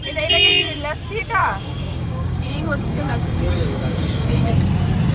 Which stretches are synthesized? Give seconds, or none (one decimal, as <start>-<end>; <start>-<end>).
1.4-4.5